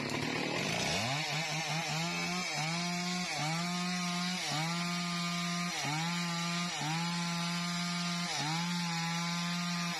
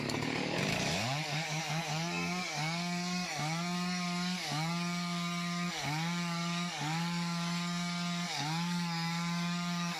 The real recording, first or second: first